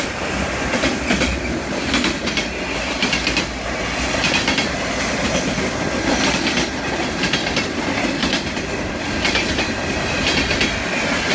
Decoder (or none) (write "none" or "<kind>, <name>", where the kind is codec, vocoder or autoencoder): none